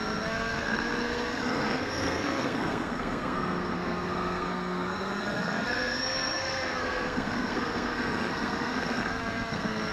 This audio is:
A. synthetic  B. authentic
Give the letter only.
A